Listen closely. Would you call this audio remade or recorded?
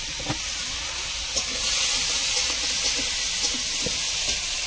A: recorded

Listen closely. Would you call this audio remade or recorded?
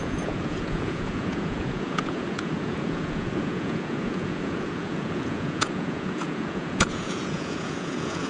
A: remade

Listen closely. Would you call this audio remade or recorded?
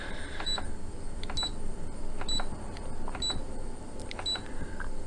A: recorded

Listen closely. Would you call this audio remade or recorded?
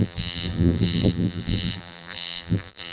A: remade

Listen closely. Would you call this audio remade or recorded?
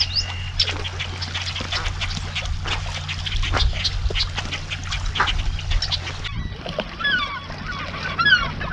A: recorded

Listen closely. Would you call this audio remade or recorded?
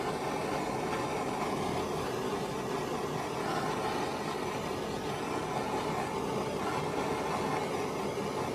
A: recorded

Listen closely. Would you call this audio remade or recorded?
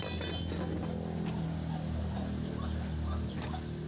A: recorded